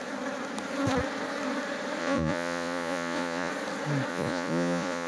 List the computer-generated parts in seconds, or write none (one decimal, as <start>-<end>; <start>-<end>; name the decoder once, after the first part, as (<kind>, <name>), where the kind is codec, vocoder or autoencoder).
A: 2.0-3.5 (vocoder, Vocos); 4.1-5.1